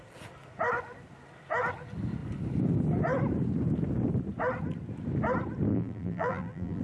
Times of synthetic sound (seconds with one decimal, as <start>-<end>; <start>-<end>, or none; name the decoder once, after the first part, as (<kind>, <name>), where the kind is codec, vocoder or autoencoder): 5.7-6.8 (vocoder, BigVGAN v2)